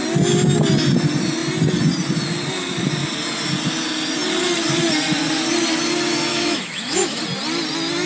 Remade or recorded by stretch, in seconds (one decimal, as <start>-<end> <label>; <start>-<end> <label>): 0.0-6.3 recorded; 6.3-7.2 remade; 7.2-8.1 recorded